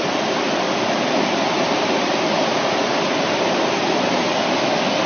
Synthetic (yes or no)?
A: no